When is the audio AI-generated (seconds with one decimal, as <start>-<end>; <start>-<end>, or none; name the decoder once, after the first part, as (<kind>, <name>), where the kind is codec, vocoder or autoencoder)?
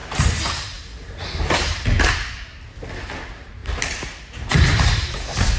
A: none